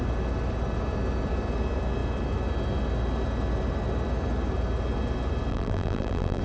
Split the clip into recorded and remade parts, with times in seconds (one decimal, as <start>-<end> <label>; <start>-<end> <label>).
0.0-5.5 recorded; 5.5-6.4 remade